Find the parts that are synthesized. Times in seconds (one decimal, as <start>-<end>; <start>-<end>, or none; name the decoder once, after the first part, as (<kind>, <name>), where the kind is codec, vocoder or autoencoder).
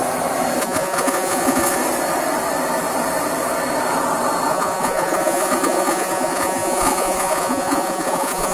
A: 0.6-1.8 (vocoder, Vocos); 4.5-8.5